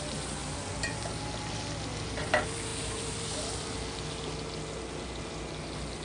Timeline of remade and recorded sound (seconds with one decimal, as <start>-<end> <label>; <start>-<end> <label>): 0.0-6.0 recorded